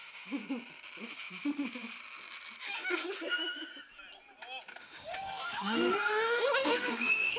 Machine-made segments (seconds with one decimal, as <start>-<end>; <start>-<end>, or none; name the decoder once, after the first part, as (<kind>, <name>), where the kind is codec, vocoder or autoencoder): 0.0-0.4 (autoencoder, DAC-VAE); 1.0-2.0; 2.6-3.7; 4.8-7.4